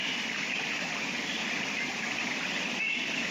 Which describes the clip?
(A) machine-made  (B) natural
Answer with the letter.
B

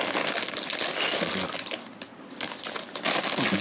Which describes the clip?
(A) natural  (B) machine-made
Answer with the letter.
A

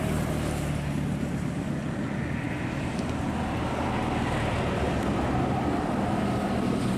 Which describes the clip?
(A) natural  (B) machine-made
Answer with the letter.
A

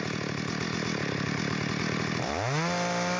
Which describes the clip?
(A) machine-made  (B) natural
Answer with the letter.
B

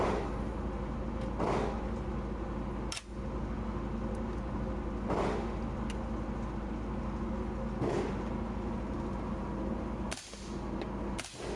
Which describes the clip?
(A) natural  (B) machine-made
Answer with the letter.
A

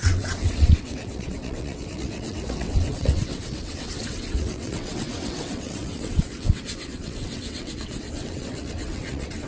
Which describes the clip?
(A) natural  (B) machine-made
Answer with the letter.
B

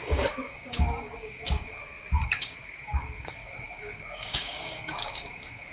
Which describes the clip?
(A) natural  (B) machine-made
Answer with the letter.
B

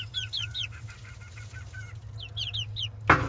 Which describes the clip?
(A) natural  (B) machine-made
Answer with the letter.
A